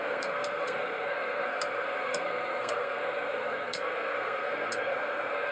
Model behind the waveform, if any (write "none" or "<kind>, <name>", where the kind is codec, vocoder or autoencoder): codec, SNAC